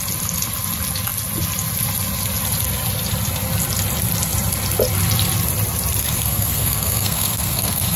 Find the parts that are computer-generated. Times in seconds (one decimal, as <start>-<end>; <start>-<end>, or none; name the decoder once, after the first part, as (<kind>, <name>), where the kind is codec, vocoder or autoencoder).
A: 6.0-8.0 (codec, SNAC)